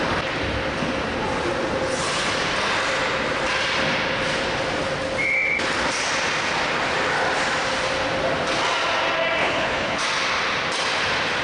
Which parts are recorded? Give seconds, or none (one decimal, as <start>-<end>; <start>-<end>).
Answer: 0.0-9.4; 10.0-11.4